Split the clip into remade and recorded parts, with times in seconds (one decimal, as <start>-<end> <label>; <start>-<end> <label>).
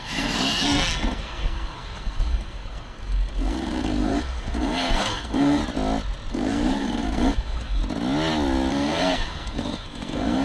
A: 0.0-5.6 remade; 5.6-6.3 recorded; 6.3-7.8 remade; 7.8-8.7 recorded; 8.7-10.4 remade